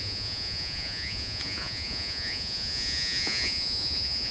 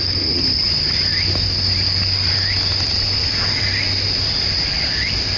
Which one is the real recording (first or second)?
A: second